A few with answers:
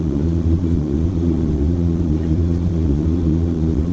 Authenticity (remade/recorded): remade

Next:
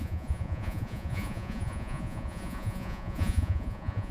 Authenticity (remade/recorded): remade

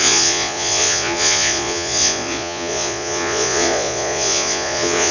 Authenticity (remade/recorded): remade